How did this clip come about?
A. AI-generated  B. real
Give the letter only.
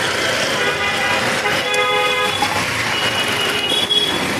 B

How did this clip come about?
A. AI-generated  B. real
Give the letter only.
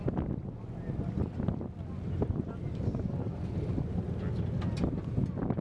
B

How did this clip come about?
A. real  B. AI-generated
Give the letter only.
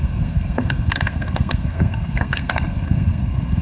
B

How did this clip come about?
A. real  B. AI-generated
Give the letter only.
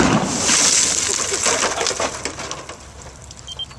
A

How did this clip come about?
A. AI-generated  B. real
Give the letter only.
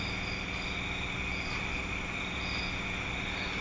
B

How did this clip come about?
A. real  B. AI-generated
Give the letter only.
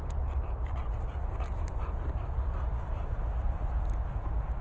A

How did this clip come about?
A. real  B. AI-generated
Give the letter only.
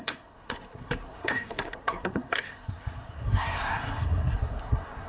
B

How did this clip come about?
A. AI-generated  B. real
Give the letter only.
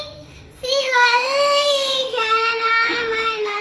A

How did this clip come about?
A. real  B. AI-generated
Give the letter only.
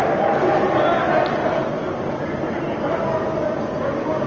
A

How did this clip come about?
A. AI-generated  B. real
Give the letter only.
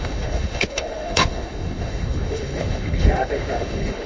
A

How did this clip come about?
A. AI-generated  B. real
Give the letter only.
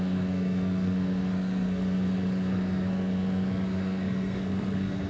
A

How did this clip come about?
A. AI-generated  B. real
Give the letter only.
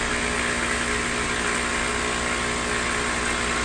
B